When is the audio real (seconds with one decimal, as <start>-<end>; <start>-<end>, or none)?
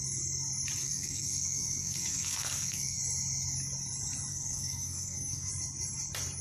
0.0-0.8; 3.0-4.3; 5.5-6.4